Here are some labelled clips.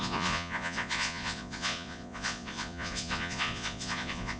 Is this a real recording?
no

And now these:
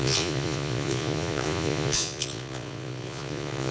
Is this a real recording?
no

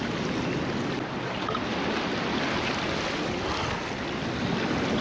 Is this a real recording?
yes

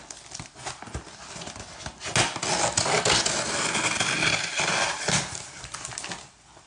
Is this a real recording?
yes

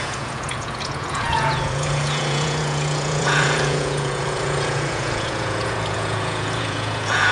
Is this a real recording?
no